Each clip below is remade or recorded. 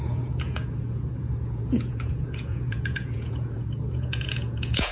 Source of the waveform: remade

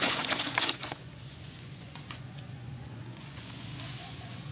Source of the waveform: remade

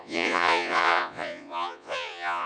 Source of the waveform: remade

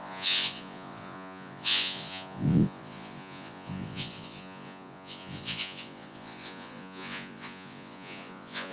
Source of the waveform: remade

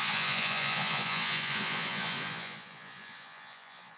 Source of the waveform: remade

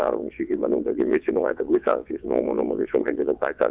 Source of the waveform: remade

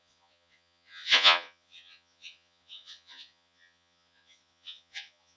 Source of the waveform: remade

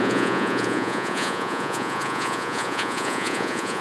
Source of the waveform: remade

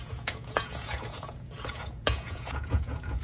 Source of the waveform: remade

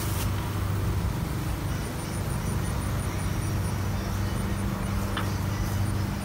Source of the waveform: recorded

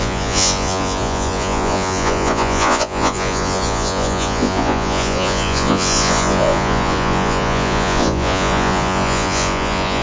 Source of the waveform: remade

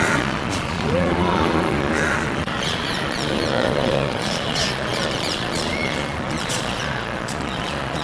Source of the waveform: remade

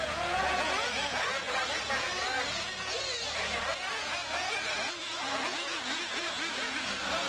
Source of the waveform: remade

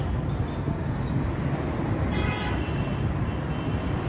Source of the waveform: recorded